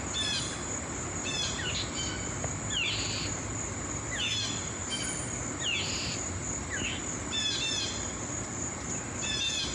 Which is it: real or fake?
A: real